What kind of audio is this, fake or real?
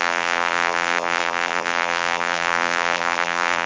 fake